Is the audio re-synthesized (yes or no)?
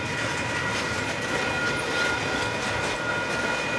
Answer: no